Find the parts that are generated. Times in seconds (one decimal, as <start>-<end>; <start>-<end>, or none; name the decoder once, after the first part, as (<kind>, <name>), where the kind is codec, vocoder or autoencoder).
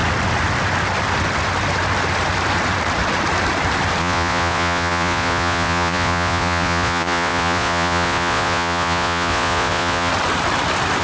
4.0-10.1 (vocoder, Vocos)